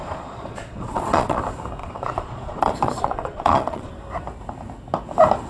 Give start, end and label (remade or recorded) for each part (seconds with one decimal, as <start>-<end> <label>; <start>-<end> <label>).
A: 0.0-1.4 remade; 1.4-1.8 recorded; 1.8-3.9 remade; 3.9-5.5 recorded